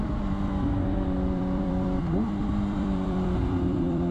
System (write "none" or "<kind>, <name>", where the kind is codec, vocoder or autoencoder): vocoder, BigVGAN v2